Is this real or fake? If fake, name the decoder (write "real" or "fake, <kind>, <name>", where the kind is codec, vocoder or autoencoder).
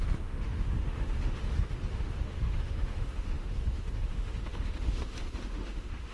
fake, autoencoder, DAC-VAE